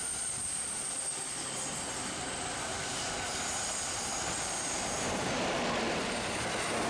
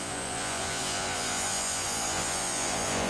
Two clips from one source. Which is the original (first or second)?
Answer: first